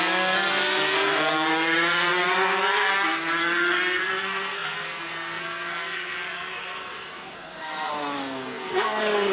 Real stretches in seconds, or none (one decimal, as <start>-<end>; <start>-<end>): none